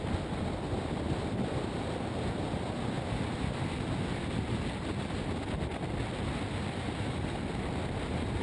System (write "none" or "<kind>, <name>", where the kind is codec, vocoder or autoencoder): none